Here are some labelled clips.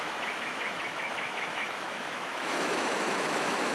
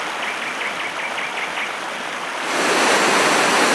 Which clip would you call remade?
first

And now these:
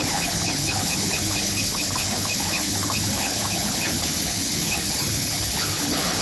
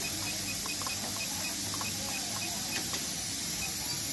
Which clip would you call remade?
first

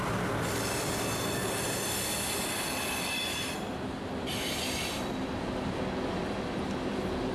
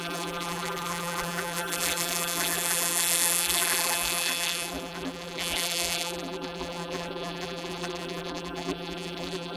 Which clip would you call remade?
second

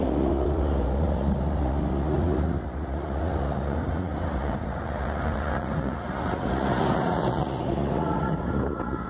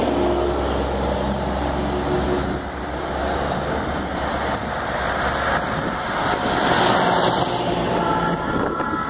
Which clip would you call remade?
first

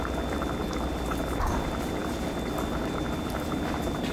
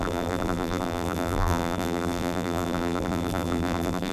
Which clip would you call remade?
second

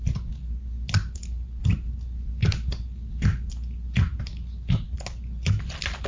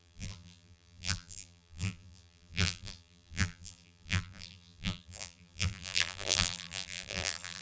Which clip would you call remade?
second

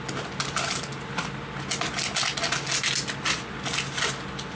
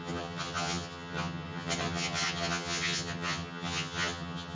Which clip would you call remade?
second